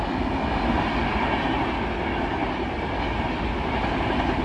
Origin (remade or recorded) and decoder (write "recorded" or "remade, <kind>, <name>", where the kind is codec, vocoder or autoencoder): recorded